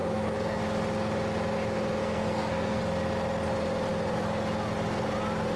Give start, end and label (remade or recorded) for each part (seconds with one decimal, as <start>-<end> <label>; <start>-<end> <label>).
0.0-0.6 remade; 0.6-2.0 recorded; 2.0-2.8 remade; 2.8-5.6 recorded